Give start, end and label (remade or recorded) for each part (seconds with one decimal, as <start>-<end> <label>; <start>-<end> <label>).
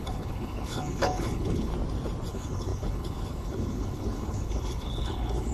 0.0-1.7 remade; 1.7-2.3 recorded; 2.3-5.5 remade